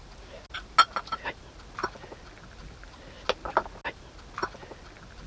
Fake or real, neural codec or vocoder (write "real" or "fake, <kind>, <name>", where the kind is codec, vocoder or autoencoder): real